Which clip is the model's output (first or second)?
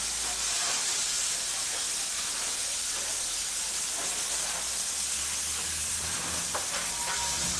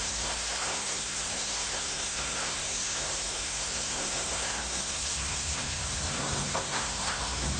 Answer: second